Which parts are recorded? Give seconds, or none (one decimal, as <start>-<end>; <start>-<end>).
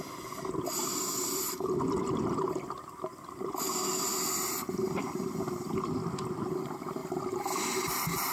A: 0.0-3.1; 4.1-5.0; 5.7-7.0; 7.6-8.3